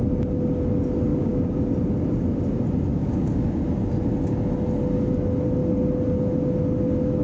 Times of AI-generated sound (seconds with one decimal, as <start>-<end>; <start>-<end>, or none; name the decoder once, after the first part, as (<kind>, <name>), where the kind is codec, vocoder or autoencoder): 1.1-1.6 (codec, DAC); 2.9-3.6